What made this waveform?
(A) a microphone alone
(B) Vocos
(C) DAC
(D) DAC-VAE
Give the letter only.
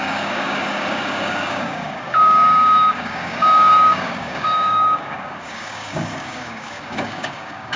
C